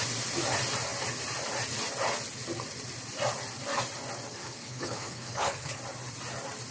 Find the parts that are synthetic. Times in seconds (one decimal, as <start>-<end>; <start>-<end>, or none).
4.3-5.8